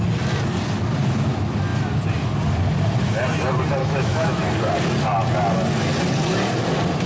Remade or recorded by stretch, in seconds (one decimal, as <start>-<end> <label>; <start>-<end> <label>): 0.0-3.8 recorded; 3.8-4.5 remade; 4.5-7.1 recorded